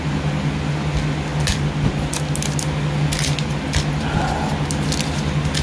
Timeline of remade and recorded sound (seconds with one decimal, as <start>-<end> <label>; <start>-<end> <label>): 0.0-5.6 recorded